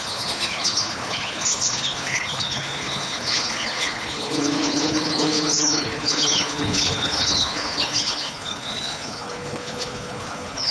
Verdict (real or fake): fake